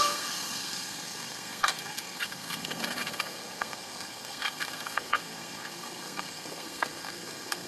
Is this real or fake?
fake